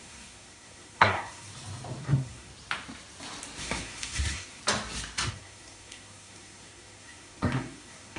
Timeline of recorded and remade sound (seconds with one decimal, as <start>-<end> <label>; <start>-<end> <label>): 0.0-1.5 remade; 1.5-2.0 recorded; 2.0-2.5 remade; 2.5-3.6 recorded; 3.6-4.6 remade; 4.6-5.3 recorded; 5.3-8.2 remade